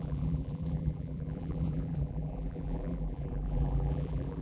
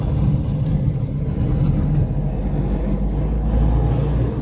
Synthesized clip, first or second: first